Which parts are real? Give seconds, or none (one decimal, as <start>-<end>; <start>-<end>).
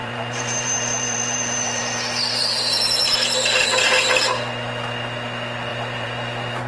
1.8-2.2; 2.8-5.7